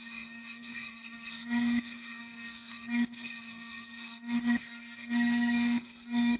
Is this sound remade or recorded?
remade